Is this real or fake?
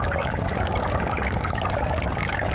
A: fake